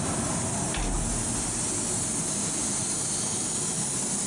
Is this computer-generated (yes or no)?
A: no